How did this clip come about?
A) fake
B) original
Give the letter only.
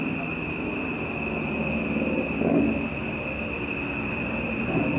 B